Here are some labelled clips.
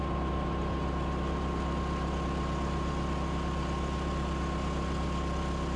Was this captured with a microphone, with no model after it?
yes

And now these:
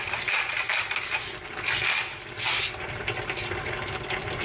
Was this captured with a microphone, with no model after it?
yes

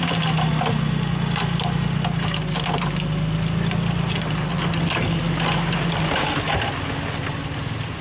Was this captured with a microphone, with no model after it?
yes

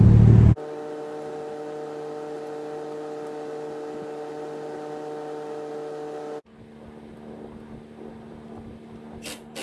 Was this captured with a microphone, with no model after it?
yes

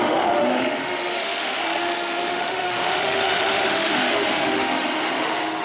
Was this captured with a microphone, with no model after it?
no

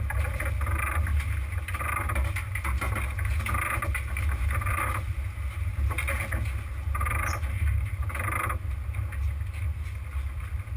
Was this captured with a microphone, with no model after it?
yes